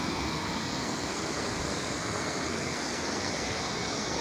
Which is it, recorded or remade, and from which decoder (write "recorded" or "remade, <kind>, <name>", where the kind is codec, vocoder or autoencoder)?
remade, codec, SNAC